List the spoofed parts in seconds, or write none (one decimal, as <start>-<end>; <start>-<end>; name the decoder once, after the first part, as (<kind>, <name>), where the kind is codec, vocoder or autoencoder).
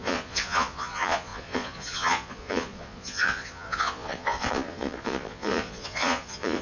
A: 0.0-6.6 (vocoder, Vocos)